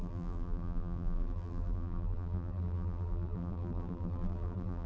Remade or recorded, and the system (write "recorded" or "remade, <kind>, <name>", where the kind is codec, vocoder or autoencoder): remade, vocoder, BigVGAN v2